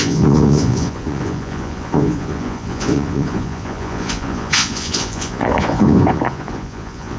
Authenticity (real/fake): fake